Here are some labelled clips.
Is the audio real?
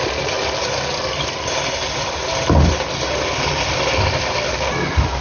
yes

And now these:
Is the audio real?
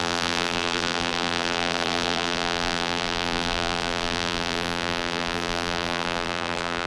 no